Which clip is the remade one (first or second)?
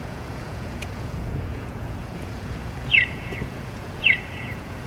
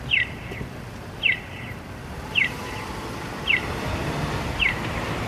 first